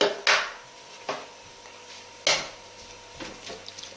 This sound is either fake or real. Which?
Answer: real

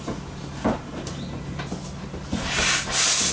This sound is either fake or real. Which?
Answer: real